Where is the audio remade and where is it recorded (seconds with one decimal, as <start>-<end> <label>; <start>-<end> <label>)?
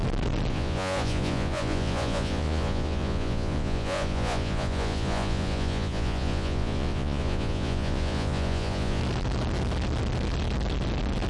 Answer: 0.0-0.5 recorded; 0.5-9.0 remade; 9.0-11.3 recorded